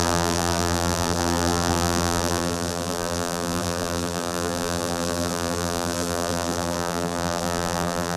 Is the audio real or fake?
fake